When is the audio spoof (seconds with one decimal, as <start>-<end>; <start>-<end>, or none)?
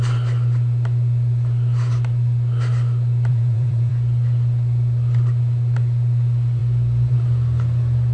3.3-3.9